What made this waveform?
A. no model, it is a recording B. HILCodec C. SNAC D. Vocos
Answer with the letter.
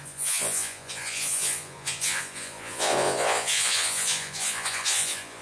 D